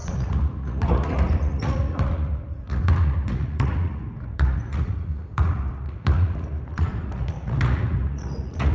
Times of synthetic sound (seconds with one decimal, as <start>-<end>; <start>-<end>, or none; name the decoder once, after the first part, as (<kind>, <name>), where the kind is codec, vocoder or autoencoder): 0.0-8.7 (vocoder, Vocos)